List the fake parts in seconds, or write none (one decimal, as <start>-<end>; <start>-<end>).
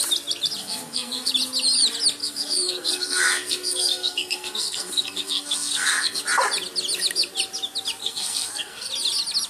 0.6-1.3; 2.2-6.2; 8.0-8.9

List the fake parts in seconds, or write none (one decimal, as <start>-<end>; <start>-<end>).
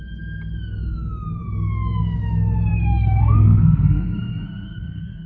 2.7-5.3